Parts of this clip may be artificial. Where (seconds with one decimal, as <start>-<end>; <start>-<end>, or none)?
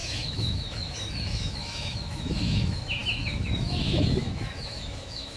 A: 0.0-5.4